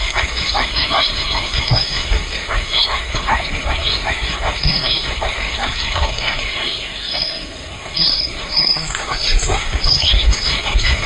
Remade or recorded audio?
remade